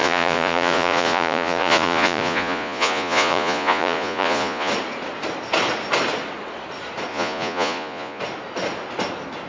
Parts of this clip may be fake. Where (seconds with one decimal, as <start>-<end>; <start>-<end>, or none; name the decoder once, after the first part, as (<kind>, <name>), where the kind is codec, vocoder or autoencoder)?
0.0-4.7 (vocoder, Vocos); 7.1-8.2